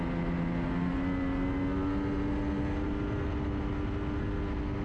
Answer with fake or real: real